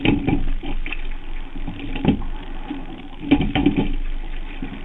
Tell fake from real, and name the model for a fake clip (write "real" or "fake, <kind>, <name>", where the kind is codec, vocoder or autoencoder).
real